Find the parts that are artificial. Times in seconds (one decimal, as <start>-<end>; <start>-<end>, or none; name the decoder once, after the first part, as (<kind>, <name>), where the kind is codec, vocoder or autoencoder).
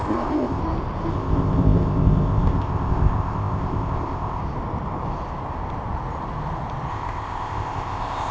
0.0-0.6 (codec, ZipCodec); 1.1-4.4; 6.9-8.3